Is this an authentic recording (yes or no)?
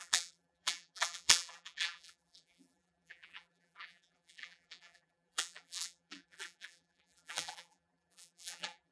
no